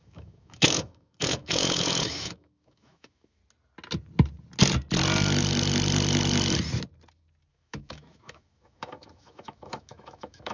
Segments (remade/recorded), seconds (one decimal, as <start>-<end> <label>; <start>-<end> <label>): 0.0-3.4 remade; 3.4-7.5 recorded; 7.5-10.5 remade